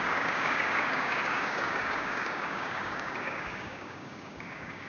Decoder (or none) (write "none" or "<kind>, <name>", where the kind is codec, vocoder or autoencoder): codec, DAC